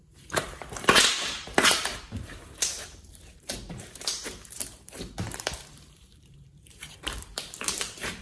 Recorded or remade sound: remade